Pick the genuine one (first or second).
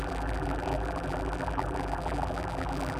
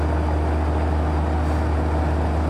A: second